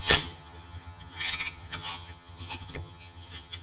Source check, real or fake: fake